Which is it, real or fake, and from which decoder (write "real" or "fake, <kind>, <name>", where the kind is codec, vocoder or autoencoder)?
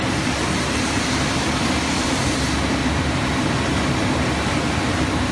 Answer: real